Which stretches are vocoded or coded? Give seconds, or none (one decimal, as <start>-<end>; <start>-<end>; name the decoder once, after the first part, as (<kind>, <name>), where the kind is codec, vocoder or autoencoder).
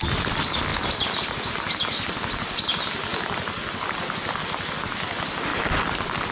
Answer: none